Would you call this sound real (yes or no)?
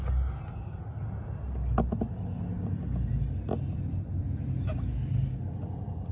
yes